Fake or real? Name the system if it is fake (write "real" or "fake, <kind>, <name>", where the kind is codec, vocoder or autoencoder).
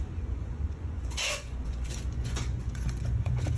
fake, vocoder, Vocos